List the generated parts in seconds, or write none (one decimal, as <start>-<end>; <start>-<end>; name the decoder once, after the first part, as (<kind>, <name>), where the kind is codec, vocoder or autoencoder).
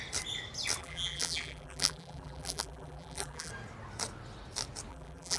0.8-3.5 (vocoder, BigVGAN v2); 4.9-5.4